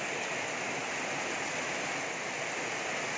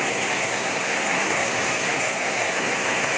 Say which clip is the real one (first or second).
first